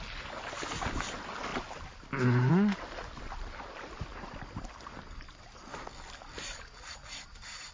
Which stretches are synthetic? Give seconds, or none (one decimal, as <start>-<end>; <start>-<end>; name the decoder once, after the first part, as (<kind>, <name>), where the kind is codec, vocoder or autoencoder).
none